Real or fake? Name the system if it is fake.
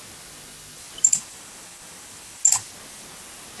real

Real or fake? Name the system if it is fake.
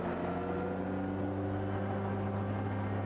real